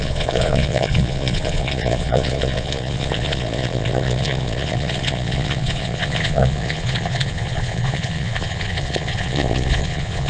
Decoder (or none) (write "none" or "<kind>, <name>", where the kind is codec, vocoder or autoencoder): vocoder, Vocos